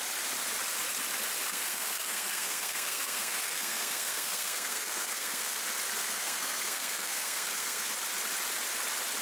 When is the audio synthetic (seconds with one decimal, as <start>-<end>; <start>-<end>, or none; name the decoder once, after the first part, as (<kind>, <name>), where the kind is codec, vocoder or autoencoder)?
1.5-5.6 (codec, SNAC); 6.0-7.9